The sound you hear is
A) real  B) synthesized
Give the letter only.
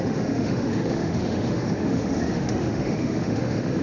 B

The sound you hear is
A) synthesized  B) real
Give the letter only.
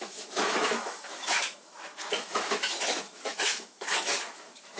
A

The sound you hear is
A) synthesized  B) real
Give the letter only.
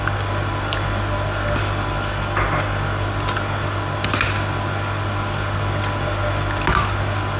B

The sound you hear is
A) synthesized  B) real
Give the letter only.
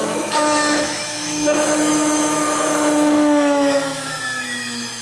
A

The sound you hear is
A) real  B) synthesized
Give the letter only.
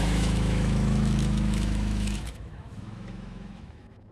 B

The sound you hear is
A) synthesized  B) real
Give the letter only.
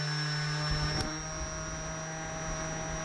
B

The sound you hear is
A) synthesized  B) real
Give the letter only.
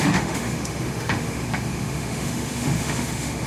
A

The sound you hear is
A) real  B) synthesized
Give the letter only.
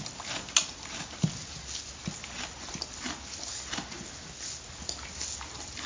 A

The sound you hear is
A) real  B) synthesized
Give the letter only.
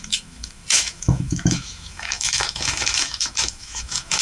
B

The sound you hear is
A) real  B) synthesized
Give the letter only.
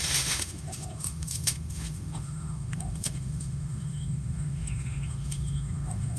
B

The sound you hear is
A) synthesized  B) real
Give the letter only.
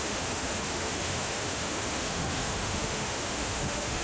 A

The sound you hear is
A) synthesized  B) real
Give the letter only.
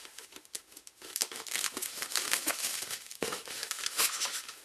A